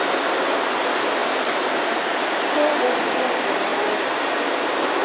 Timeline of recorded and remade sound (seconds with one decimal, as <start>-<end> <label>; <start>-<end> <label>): 0.0-5.0 recorded